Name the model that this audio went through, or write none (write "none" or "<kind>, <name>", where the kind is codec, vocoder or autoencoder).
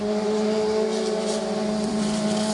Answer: vocoder, BigVGAN v2